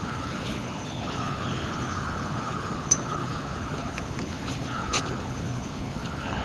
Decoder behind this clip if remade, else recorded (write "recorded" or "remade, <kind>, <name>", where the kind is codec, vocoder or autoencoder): remade, codec, HILCodec